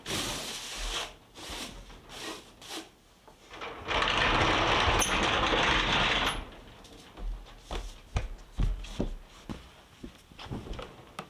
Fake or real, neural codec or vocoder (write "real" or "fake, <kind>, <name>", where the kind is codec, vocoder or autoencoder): real